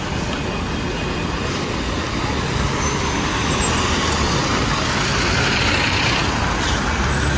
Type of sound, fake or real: real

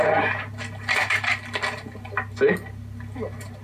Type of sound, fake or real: real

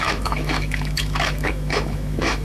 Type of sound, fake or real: fake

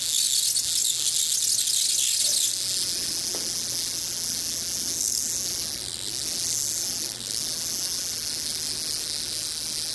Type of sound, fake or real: real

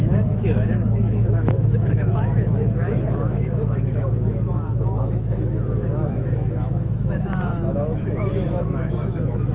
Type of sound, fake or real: fake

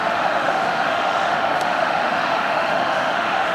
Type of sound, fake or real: fake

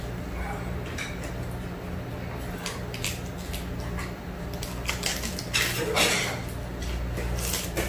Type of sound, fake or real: real